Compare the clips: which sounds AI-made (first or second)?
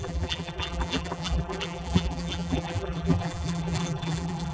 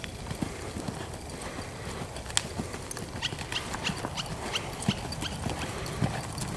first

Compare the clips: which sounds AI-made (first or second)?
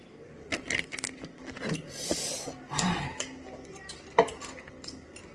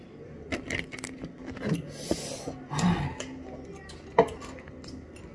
first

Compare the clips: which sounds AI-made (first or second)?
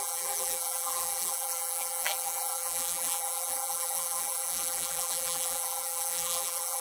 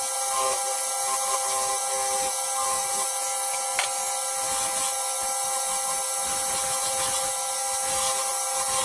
first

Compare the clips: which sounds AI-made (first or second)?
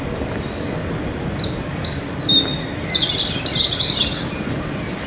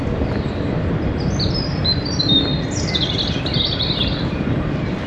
second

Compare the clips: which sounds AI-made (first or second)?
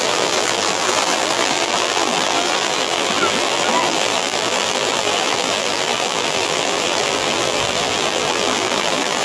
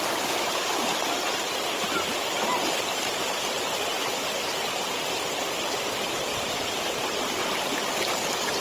first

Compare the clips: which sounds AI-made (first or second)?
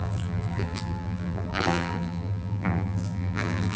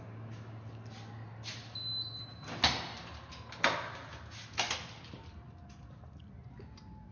first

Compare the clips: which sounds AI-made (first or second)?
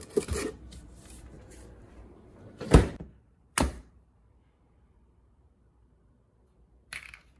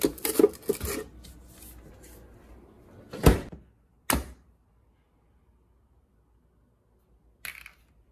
first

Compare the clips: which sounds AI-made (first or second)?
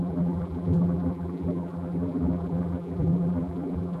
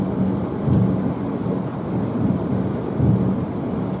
first